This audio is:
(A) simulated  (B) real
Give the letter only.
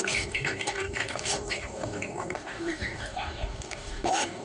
A